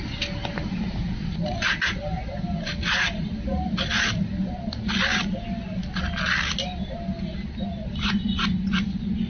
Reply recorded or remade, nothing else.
recorded